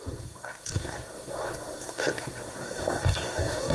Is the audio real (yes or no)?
no